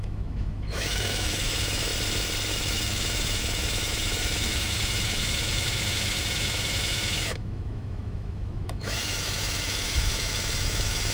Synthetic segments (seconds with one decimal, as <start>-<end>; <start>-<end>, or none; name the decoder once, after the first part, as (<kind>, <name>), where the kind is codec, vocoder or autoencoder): 0.0-1.9 (autoencoder, DAC-VAE); 2.5-11.1